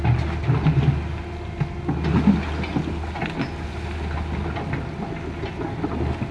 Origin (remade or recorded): recorded